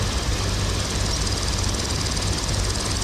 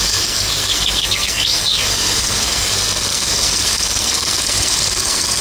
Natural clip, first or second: first